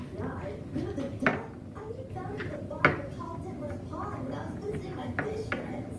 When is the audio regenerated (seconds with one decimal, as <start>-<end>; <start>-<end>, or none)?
none